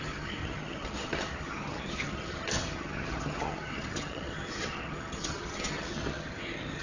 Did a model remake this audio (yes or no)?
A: yes